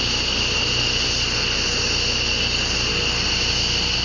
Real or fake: real